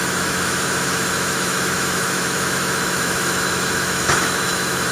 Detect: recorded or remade remade